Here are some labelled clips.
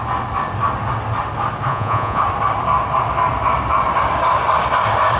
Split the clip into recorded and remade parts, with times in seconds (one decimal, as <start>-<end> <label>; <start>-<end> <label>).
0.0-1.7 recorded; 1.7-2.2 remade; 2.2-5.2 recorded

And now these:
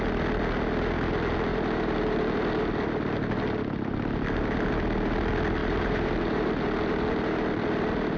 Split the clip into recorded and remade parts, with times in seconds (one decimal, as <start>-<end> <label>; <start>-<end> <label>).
0.0-1.5 recorded; 1.5-2.2 remade; 2.2-5.6 recorded; 5.6-6.5 remade; 6.5-8.2 recorded

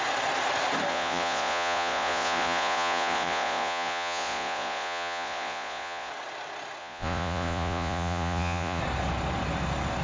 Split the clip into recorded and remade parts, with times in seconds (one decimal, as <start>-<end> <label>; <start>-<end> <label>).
0.0-0.9 recorded; 0.9-6.1 remade; 6.1-6.8 recorded; 6.8-8.8 remade; 8.8-10.0 recorded

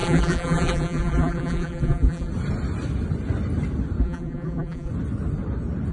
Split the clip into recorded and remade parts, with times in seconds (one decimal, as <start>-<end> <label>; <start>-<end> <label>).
0.0-2.3 remade; 2.3-4.0 recorded; 4.0-4.9 remade; 4.9-5.9 recorded